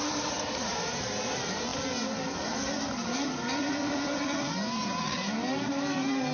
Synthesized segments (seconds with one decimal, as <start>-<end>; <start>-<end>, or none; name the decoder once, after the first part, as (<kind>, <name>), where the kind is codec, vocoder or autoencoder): 0.0-1.7 (vocoder, BigVGAN v2); 5.5-6.3